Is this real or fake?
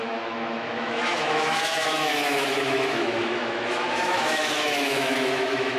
fake